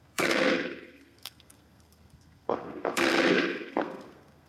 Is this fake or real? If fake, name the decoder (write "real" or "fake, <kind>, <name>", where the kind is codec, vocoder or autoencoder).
fake, codec, SNAC